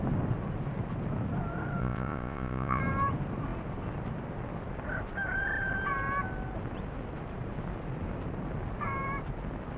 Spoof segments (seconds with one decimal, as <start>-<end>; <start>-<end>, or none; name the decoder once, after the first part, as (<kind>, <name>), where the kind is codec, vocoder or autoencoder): 1.8-2.8 (vocoder, Vocos)